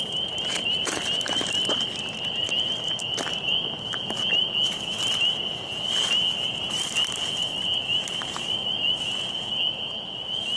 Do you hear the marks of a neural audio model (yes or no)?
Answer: no